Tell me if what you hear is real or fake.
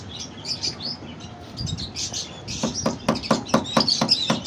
real